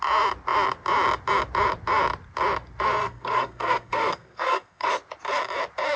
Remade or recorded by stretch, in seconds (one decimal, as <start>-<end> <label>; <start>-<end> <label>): 0.0-3.0 recorded; 3.0-4.9 remade; 4.9-6.0 recorded